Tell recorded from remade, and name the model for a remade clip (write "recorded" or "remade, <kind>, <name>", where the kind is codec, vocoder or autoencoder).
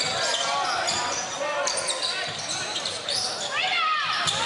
recorded